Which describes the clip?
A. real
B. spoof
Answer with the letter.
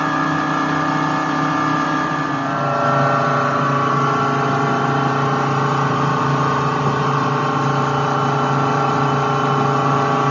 A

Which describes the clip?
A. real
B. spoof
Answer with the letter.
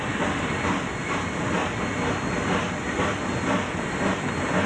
A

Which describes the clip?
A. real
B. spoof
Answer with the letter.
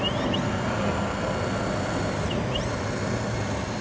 A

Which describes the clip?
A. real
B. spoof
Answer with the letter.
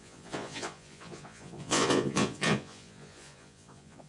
B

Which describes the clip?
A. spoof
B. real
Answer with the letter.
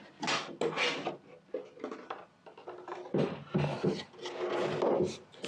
B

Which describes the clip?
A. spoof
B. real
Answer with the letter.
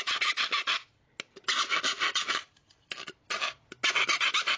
B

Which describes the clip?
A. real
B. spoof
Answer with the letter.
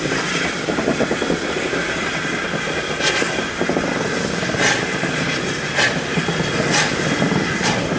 A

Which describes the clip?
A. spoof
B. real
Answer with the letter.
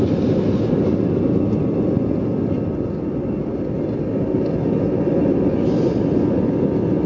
B